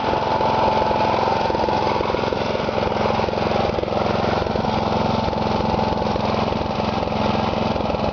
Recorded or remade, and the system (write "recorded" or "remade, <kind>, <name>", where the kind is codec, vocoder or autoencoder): recorded